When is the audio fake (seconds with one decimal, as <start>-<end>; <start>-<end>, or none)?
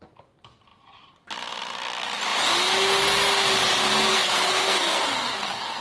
4.1-5.8